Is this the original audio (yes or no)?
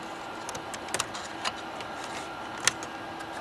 yes